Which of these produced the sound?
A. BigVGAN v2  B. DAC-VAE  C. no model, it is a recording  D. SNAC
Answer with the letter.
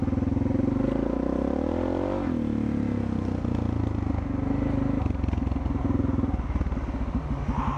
C